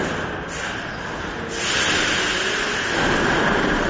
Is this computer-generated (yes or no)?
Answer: no